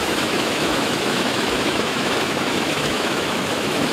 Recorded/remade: remade